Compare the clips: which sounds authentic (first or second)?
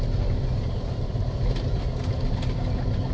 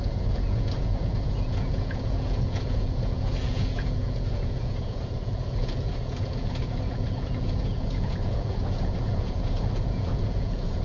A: first